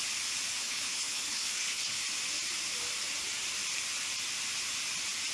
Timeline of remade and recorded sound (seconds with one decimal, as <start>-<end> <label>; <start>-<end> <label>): 0.0-0.6 recorded; 0.6-2.0 remade; 2.0-5.3 recorded